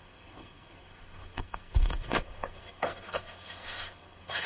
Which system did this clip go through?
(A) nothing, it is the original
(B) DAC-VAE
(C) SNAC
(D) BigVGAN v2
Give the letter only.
C